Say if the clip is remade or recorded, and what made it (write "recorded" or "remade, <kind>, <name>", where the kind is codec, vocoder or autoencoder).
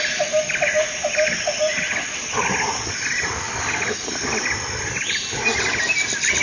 recorded